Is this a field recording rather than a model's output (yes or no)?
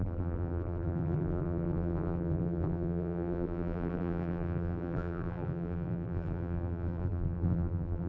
no